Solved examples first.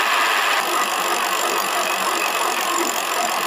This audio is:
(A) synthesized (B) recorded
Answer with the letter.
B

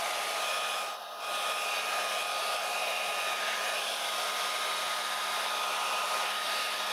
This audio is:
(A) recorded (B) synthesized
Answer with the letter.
B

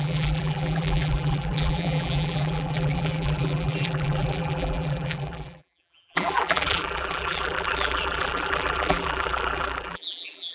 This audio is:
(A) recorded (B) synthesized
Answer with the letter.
B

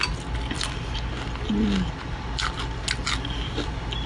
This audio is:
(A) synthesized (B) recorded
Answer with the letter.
B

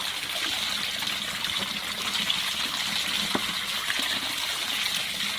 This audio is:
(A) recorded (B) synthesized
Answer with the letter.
A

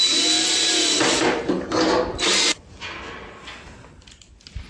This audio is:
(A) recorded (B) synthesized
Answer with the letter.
A